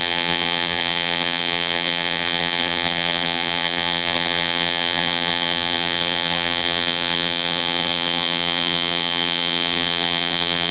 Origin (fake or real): fake